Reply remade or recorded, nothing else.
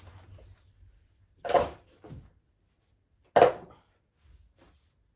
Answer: recorded